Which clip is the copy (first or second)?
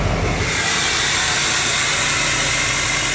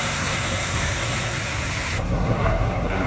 second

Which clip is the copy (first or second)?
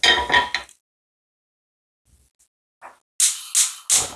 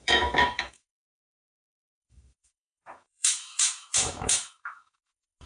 second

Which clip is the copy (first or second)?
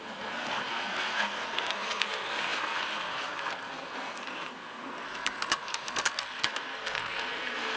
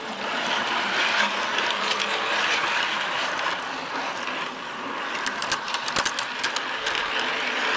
first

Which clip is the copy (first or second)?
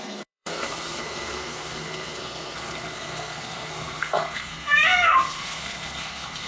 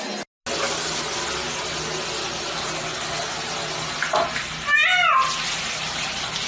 first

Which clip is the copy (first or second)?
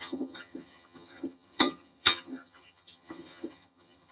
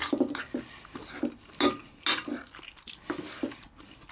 first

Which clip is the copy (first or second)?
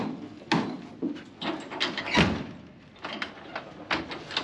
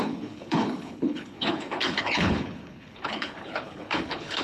second